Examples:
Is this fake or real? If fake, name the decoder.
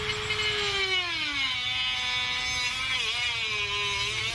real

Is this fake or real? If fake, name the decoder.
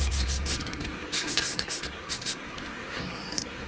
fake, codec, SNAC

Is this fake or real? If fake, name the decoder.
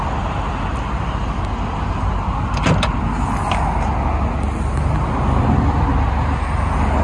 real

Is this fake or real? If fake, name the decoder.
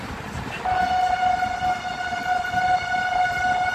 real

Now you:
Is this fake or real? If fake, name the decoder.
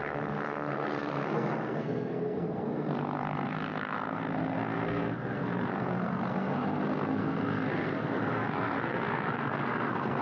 fake, codec, SNAC